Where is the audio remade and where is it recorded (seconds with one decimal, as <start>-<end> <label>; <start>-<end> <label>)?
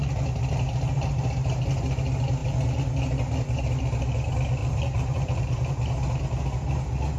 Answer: 0.0-4.6 recorded; 4.6-5.7 remade; 5.7-7.2 recorded